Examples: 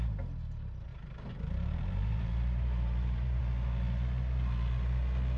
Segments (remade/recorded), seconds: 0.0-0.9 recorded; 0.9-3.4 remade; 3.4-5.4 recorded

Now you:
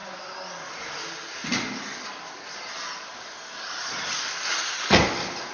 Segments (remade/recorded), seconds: 0.0-5.5 recorded

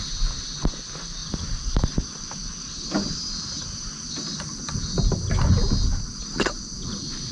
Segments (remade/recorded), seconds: 0.0-1.2 recorded; 1.2-5.3 remade; 5.3-6.1 recorded; 6.1-7.3 remade